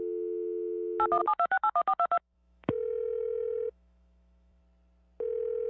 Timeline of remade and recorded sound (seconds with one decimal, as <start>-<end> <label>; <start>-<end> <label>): 0.0-1.2 recorded; 1.2-4.6 remade; 4.6-5.7 recorded

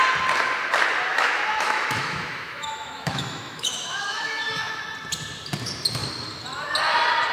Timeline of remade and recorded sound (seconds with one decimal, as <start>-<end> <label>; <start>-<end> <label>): 0.0-1.1 recorded; 1.1-4.8 remade; 4.8-7.3 recorded

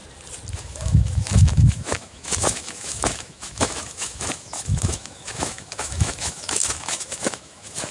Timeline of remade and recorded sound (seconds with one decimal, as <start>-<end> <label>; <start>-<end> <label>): 0.0-0.5 recorded; 0.5-7.9 remade

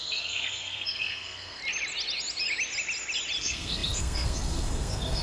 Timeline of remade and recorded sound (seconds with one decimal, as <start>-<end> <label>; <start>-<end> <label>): 0.0-1.6 remade; 1.6-3.4 recorded; 3.4-5.2 remade

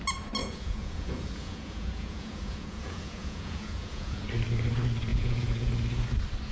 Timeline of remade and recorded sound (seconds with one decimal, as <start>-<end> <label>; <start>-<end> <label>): 0.0-0.4 recorded; 0.4-4.3 remade; 4.3-5.1 recorded; 5.1-5.7 remade; 5.7-6.5 recorded